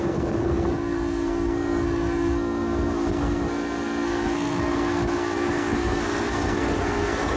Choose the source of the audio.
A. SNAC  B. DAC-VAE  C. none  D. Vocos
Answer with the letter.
A